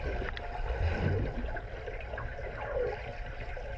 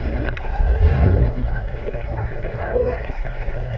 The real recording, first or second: first